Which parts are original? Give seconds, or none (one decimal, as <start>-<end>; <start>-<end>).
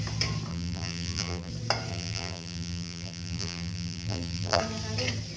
0.0-0.5; 1.5-1.9; 4.6-5.4